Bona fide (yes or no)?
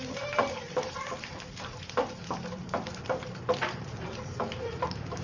no